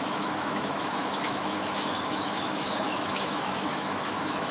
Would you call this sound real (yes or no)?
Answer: no